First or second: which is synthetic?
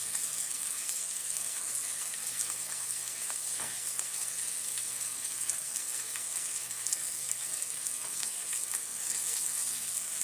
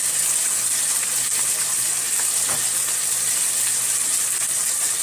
first